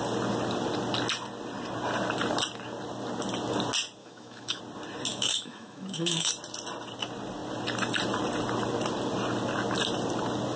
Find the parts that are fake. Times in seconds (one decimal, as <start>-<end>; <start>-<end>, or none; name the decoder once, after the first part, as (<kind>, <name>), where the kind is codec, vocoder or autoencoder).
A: 4.0-4.6 (autoencoder, DAC-VAE); 5.1-6.3